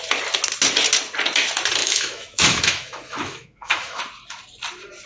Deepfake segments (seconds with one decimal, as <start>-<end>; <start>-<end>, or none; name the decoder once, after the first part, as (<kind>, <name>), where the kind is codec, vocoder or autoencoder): 1.8-4.0 (autoencoder, DAC-VAE)